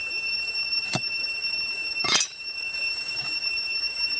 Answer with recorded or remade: remade